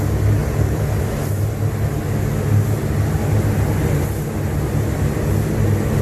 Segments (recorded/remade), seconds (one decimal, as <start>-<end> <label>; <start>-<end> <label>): 0.0-0.4 recorded; 0.4-1.5 remade; 1.5-6.0 recorded